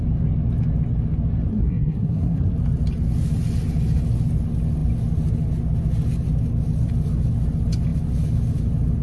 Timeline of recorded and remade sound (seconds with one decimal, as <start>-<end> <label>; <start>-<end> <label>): 0.0-1.5 recorded; 1.5-2.5 remade; 2.5-9.0 recorded